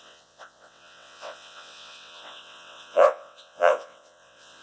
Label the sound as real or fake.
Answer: fake